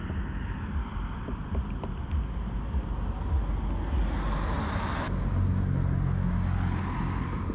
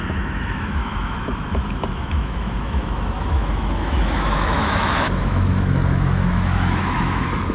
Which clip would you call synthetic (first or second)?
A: second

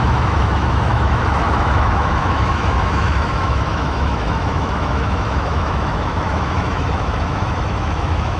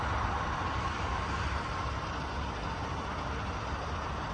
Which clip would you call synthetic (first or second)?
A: first